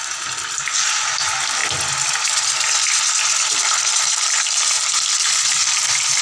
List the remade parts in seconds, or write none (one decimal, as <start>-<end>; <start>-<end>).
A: none